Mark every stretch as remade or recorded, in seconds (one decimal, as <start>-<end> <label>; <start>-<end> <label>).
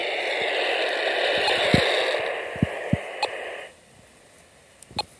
0.0-5.2 recorded